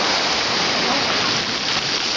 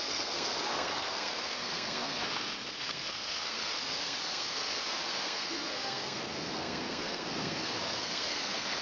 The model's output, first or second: second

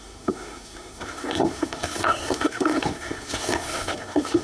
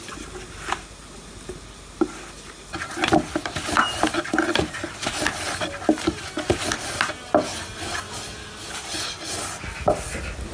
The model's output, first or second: first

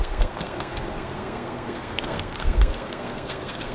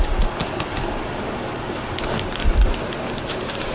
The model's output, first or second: first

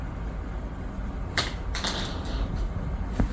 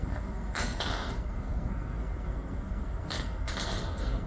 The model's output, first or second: second